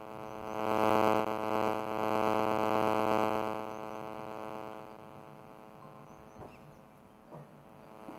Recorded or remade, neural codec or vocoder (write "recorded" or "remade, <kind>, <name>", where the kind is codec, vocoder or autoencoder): recorded